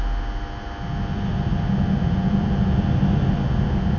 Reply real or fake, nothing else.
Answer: real